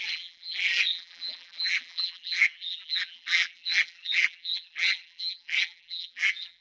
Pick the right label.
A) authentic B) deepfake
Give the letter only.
B